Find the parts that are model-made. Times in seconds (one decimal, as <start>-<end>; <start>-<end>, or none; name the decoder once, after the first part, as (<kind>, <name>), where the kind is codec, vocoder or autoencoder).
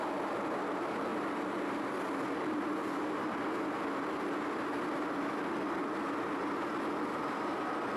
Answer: none